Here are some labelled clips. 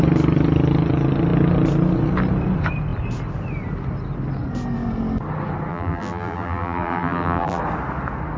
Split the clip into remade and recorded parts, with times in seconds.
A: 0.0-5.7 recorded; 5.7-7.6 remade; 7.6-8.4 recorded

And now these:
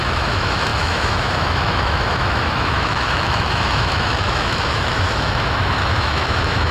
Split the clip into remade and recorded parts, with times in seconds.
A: 0.0-6.7 remade

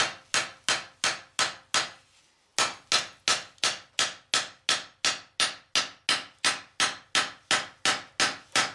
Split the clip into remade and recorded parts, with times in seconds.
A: 0.0-8.7 recorded

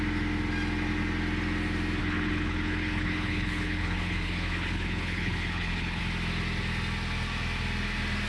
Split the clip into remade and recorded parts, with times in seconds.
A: 0.0-2.0 recorded; 2.0-6.0 remade; 6.0-8.3 recorded

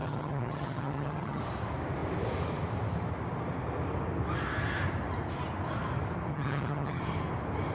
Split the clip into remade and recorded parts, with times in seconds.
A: 0.0-1.4 remade; 1.4-6.3 recorded; 6.3-7.0 remade; 7.0-7.7 recorded

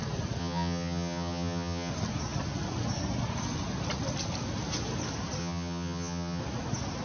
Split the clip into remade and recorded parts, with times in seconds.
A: 0.0-0.4 recorded; 0.4-1.9 remade; 1.9-5.4 recorded; 5.4-6.4 remade; 6.4-7.0 recorded

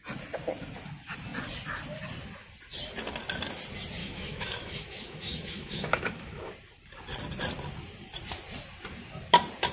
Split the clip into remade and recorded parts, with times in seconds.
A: 0.0-4.0 recorded; 4.0-6.5 remade; 6.5-9.7 recorded

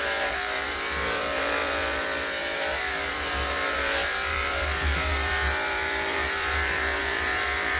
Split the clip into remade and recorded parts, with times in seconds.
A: 0.0-7.8 remade